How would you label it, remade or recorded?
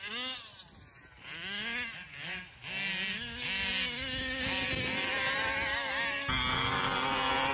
recorded